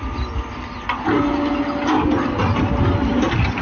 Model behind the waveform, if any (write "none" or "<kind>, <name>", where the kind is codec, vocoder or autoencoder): none